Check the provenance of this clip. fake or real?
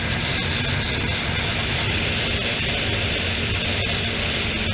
real